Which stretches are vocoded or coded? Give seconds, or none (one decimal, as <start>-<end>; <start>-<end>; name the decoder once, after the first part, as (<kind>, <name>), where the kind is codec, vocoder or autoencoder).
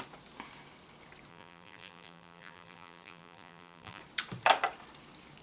1.3-4.0 (vocoder, BigVGAN v2)